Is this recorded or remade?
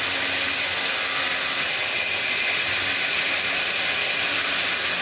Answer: recorded